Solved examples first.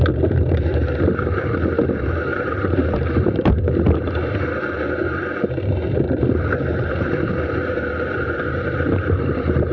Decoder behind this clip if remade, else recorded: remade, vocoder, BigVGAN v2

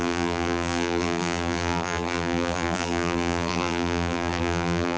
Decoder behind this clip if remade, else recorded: remade, vocoder, BigVGAN v2